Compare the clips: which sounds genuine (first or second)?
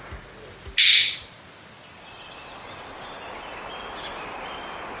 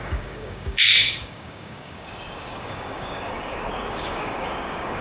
first